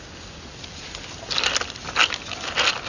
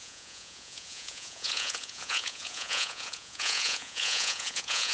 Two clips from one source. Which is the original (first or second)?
first